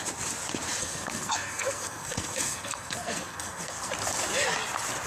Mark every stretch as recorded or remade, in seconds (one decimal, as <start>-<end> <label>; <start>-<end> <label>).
0.0-0.8 recorded; 0.8-3.9 remade; 3.9-5.1 recorded